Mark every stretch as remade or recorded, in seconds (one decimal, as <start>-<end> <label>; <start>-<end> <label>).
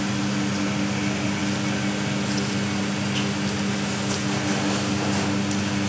0.0-5.9 recorded